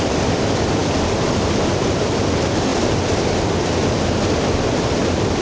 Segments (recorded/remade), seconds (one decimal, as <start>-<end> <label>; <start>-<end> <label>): 0.0-5.4 recorded